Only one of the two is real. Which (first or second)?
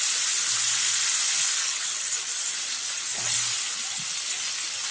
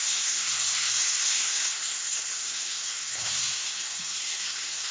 first